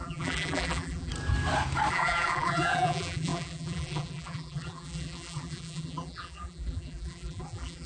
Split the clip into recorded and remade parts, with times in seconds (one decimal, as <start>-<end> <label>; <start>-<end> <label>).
0.0-1.1 remade; 1.1-1.9 recorded; 1.9-7.9 remade